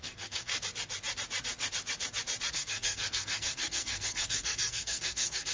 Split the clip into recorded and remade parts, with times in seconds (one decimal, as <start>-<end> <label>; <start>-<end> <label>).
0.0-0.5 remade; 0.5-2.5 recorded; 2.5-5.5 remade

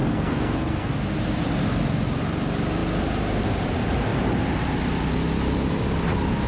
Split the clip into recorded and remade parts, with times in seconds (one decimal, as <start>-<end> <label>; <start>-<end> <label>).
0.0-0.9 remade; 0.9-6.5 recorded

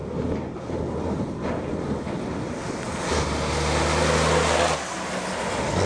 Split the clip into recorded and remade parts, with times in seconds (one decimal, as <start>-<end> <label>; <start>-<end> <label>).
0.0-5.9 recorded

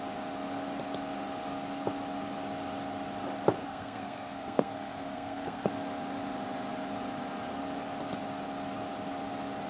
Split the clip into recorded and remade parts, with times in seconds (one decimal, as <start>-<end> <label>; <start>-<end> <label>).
0.0-3.6 recorded; 3.6-5.7 remade; 5.7-9.7 recorded

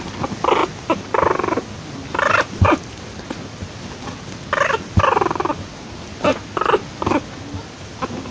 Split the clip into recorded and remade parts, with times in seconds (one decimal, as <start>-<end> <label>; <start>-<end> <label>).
0.0-8.3 recorded

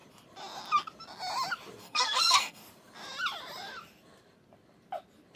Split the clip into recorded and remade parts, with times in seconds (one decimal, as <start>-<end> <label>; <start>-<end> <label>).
0.0-1.8 recorded; 1.8-2.6 remade; 2.6-5.4 recorded

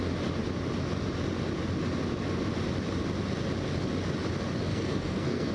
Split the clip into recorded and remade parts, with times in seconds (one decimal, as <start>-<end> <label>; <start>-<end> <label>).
0.0-4.7 recorded; 4.7-5.5 remade

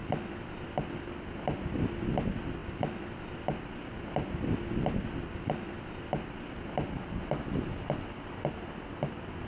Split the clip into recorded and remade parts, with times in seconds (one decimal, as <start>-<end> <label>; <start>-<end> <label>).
0.0-9.5 recorded